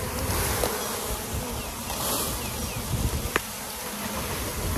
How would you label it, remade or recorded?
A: recorded